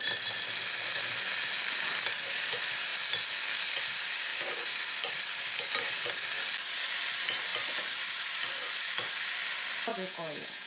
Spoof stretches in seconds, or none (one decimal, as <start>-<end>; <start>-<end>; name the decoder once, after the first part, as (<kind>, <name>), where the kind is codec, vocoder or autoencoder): 9.9-10.7 (vocoder, Vocos)